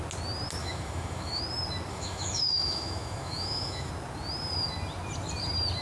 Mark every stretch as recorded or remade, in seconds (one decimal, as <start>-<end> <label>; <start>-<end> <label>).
0.0-0.6 recorded; 0.6-1.4 remade; 1.4-1.9 recorded; 1.9-3.9 remade; 3.9-5.8 recorded